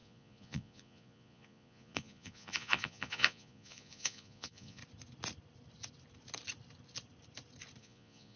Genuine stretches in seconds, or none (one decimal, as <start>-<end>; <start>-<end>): 4.8-7.8

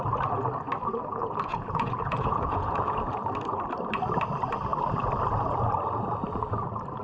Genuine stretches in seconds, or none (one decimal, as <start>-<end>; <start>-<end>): 0.0-1.2; 3.1-7.0

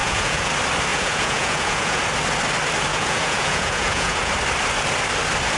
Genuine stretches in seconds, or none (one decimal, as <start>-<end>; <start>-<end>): 0.5-0.9; 2.0-2.9; 4.3-5.6

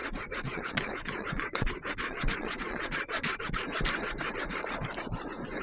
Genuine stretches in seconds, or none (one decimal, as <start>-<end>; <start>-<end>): 3.4-5.6